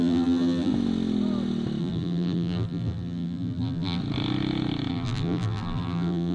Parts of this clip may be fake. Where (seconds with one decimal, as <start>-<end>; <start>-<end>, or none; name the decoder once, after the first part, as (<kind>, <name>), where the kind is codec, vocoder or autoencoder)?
0.0-0.7 (vocoder, BigVGAN v2); 1.8-4.0; 4.9-6.3